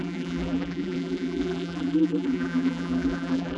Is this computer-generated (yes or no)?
yes